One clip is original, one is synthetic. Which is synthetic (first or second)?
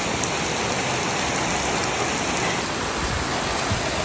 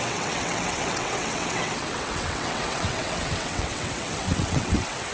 second